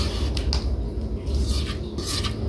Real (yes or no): yes